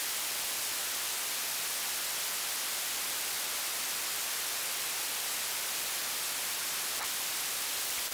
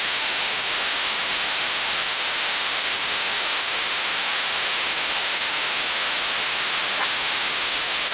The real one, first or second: first